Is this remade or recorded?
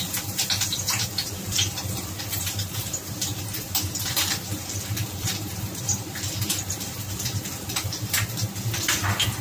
remade